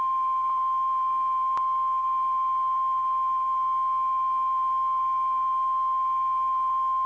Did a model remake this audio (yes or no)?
no